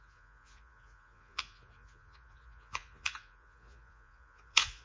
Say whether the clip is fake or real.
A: fake